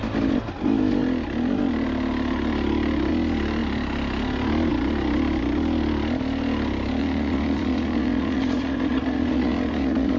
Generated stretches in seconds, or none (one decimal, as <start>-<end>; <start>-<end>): 7.0-10.2